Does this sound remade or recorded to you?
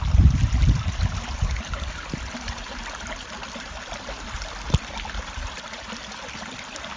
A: recorded